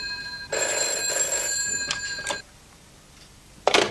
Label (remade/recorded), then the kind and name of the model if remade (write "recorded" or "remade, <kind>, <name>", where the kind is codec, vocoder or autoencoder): remade, vocoder, BigVGAN v2